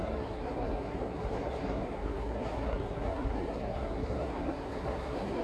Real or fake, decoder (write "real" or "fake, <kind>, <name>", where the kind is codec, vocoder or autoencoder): fake, codec, SNAC